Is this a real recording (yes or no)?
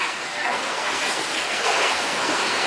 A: no